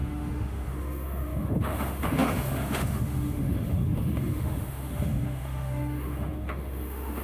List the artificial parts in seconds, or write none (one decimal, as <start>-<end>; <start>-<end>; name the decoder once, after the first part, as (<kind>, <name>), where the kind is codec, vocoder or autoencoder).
0.0-7.2 (autoencoder, DAC-VAE)